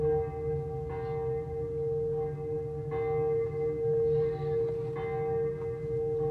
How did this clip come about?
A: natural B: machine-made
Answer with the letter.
A